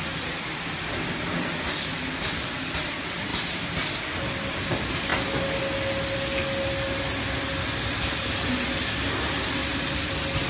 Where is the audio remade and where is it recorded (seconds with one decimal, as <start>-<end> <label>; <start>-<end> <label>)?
0.0-3.3 recorded; 3.3-4.0 remade; 4.0-9.6 recorded; 9.6-10.1 remade; 10.1-10.5 recorded